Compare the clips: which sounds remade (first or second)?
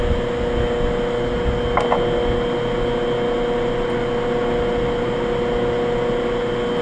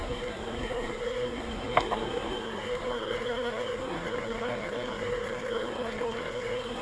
second